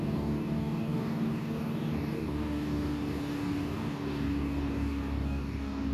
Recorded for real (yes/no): no